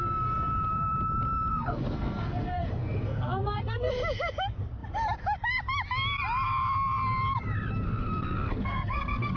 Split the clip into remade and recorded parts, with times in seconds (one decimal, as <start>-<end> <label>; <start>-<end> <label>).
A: 0.0-1.5 recorded; 1.5-3.9 remade; 3.9-8.0 recorded; 8.0-9.4 remade